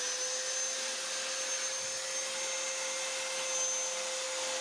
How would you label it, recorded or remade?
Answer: recorded